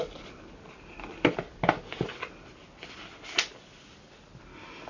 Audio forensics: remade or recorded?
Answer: recorded